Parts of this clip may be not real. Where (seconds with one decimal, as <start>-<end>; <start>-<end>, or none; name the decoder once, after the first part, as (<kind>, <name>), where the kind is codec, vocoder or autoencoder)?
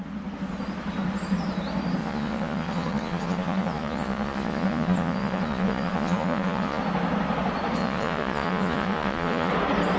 2.0-6.8 (vocoder, Vocos); 7.8-9.5